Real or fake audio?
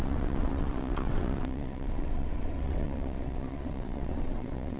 fake